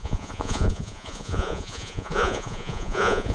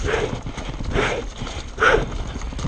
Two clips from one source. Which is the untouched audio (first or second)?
second